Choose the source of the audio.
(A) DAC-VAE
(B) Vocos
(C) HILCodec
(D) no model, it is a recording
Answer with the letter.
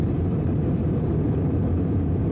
D